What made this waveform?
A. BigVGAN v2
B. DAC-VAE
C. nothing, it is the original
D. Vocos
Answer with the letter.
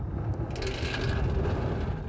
C